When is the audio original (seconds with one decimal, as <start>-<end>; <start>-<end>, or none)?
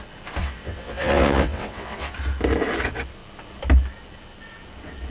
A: 0.0-0.4; 2.1-5.1